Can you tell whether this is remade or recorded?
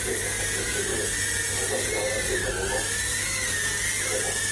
recorded